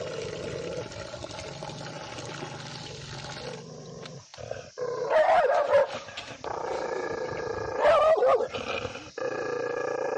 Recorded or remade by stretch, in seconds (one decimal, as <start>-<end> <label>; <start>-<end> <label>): 0.0-10.2 recorded